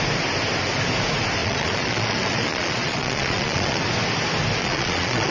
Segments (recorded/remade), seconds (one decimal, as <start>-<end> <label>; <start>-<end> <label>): 0.0-1.4 recorded; 1.4-3.8 remade; 3.8-4.6 recorded; 4.6-5.3 remade